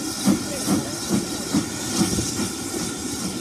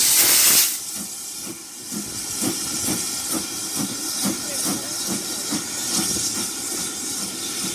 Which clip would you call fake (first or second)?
first